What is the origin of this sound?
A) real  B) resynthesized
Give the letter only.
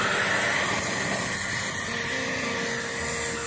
A